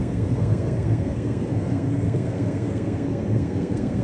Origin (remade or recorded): remade